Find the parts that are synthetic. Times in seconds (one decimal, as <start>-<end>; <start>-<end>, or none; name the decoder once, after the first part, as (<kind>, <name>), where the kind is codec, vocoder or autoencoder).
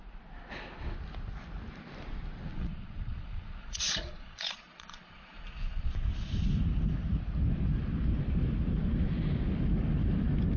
2.5-5.9 (vocoder, Vocos)